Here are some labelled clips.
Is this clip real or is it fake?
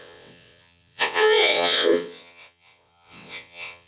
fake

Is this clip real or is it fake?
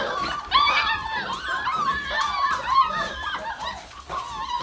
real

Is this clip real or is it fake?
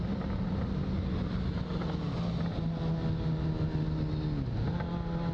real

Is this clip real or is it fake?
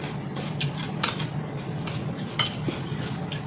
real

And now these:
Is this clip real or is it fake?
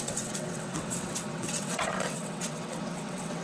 fake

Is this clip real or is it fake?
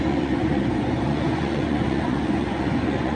fake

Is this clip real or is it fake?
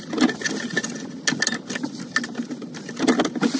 real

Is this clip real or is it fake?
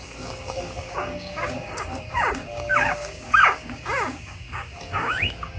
fake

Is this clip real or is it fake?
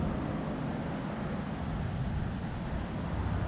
real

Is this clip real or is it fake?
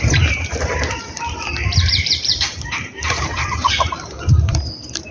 fake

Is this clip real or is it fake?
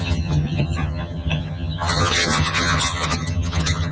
fake